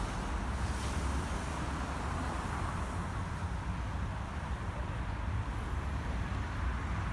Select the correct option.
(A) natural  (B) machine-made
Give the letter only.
A